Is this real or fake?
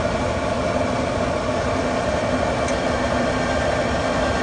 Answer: fake